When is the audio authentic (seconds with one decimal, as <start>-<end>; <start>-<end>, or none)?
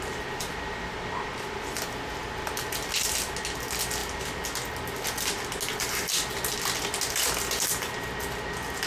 0.0-8.9